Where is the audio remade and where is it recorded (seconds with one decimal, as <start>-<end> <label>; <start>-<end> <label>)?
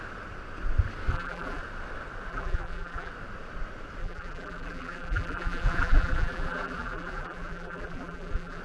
0.0-1.1 recorded; 1.1-1.6 remade; 1.6-2.3 recorded; 2.3-3.1 remade; 3.1-4.0 recorded; 4.0-8.6 remade